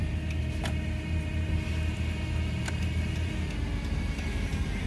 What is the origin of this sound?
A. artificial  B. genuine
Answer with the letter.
B